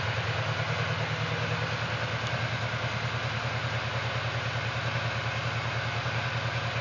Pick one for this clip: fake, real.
real